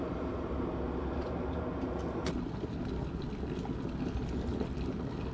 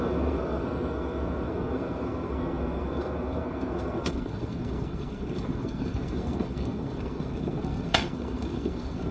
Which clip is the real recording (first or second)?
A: first